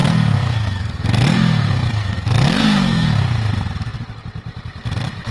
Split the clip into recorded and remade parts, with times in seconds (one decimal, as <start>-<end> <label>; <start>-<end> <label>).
0.0-3.2 remade; 3.2-5.3 recorded